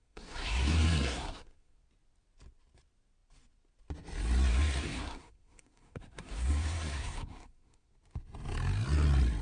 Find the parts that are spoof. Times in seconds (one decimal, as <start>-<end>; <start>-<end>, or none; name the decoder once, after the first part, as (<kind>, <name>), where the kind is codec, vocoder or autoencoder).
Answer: 0.0-1.8 (codec, SNAC); 4.5-7.9